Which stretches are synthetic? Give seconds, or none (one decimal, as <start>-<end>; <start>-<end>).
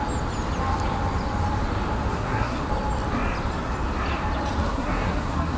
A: 2.1-2.6; 4.6-5.6